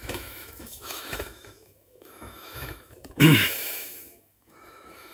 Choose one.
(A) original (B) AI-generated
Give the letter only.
B